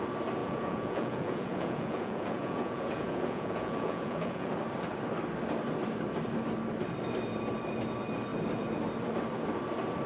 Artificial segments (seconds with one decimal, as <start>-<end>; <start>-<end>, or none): 0.4-4.5